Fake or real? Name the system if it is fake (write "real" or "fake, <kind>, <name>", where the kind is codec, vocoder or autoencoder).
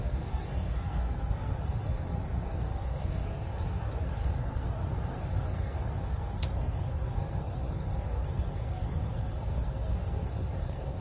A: fake, codec, SNAC